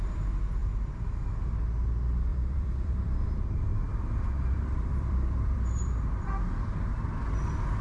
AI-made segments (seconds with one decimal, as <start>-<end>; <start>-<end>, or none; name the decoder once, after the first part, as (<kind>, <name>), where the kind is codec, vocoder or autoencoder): 2.3-6.3 (vocoder, BigVGAN v2)